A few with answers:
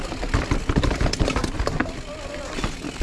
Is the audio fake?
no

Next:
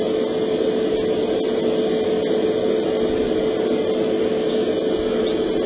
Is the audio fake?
no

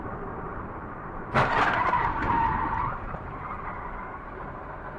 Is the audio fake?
yes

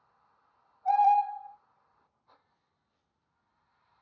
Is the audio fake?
no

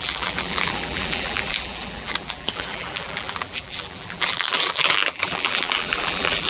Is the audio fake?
yes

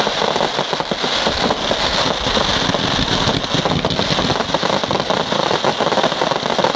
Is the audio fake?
no